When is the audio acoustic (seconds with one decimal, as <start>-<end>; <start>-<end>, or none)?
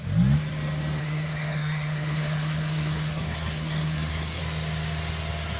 0.0-1.0; 4.4-5.6